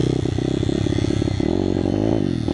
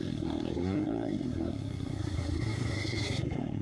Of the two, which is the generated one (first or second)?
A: second